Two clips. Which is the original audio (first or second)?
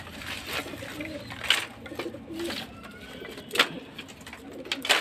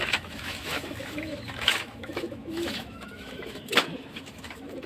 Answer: first